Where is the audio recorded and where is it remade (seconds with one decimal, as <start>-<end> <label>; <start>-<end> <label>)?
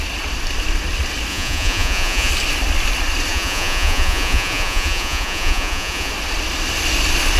0.0-1.3 recorded; 1.3-2.3 remade; 2.3-3.3 recorded; 3.3-6.1 remade; 6.1-7.4 recorded